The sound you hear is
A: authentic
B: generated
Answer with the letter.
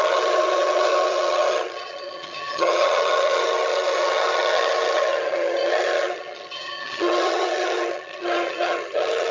B